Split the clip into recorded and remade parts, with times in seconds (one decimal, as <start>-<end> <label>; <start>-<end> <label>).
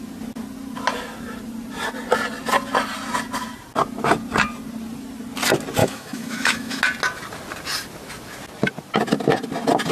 0.0-5.8 recorded; 5.8-6.8 remade; 6.8-9.9 recorded